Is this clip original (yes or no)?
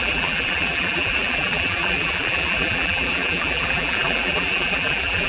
no